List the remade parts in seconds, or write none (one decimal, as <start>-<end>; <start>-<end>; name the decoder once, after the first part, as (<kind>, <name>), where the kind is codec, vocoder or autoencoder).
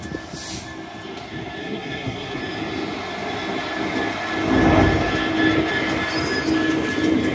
1.6-2.4 (codec, SNAC)